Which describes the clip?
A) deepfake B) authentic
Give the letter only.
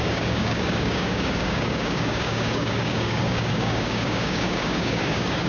A